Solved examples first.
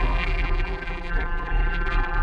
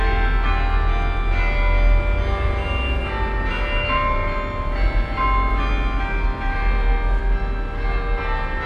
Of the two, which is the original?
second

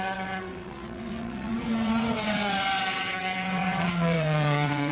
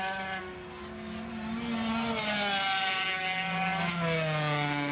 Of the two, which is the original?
second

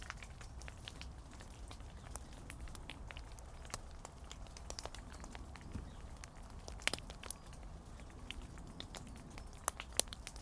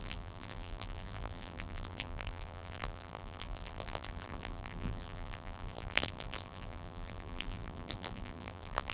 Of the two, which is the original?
first